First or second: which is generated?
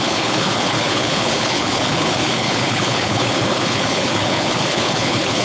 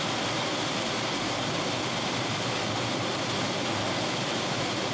first